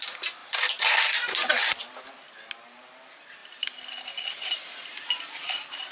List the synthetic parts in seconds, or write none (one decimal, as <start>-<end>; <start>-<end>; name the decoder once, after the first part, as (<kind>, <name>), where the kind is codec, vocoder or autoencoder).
none